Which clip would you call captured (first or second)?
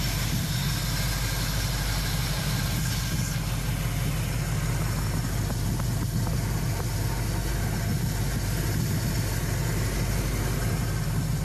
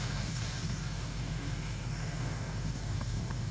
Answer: first